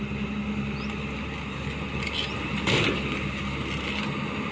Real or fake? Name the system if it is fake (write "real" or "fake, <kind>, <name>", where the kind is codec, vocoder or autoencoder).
real